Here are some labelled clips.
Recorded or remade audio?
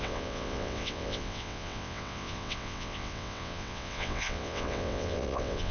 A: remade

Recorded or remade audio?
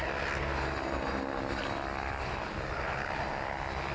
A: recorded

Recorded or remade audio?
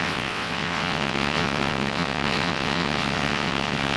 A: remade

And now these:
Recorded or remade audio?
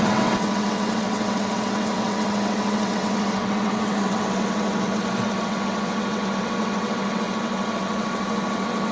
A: remade